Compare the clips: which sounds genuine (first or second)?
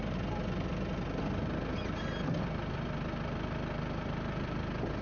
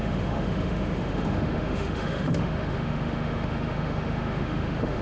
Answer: first